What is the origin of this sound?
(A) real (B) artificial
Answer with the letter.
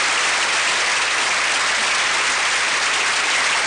A